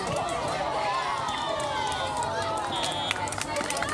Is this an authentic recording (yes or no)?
yes